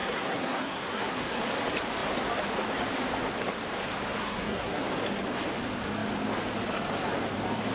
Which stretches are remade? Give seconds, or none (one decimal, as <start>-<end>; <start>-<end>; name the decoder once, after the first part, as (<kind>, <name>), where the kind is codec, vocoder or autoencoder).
0.0-1.4 (codec, SNAC); 4.2-4.8